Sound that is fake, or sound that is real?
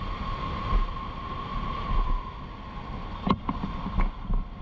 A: real